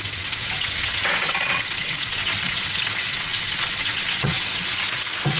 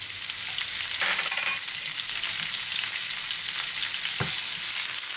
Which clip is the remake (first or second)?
first